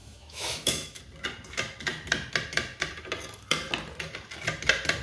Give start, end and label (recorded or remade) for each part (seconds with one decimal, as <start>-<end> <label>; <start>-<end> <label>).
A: 0.0-1.0 remade; 1.0-5.0 recorded